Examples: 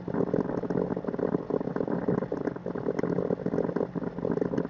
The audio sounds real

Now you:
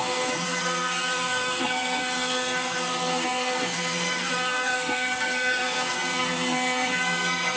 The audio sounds fake